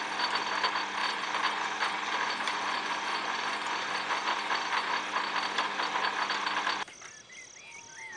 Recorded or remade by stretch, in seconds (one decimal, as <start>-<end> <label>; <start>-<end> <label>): 0.0-1.0 recorded; 1.0-4.9 remade; 4.9-8.2 recorded